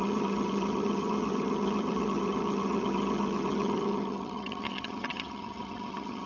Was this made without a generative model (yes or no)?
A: no